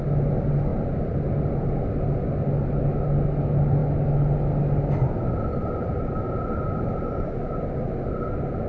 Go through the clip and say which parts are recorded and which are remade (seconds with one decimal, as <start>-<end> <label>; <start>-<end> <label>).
0.0-8.7 recorded